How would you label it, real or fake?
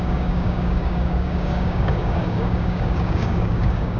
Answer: fake